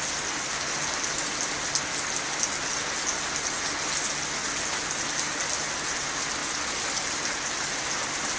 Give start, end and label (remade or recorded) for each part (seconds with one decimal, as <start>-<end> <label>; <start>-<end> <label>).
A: 0.0-8.4 recorded